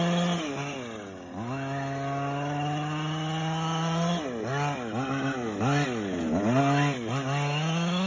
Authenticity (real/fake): real